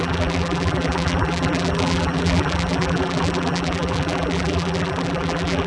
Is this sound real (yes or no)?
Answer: no